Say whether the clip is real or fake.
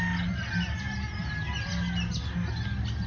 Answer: real